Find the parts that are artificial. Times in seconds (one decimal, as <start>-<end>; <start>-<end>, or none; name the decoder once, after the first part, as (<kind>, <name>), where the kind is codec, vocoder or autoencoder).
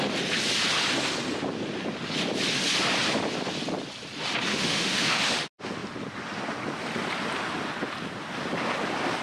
4.5-5.3 (autoencoder, DAC-VAE)